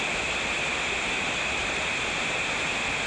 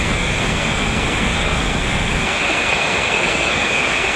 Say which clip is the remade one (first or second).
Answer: second